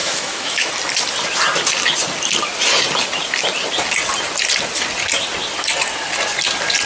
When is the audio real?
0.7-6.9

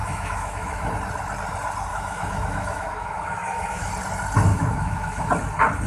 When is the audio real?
0.9-1.9; 3.9-4.5; 5.3-5.9

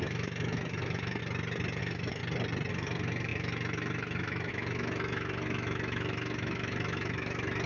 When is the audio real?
1.2-1.8; 2.2-2.7

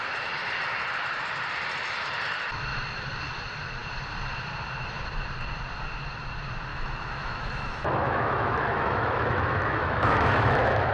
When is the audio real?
0.0-6.7

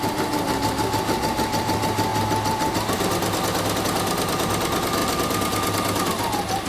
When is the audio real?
0.0-6.7

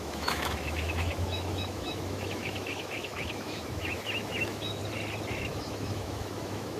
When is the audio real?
4.8-5.3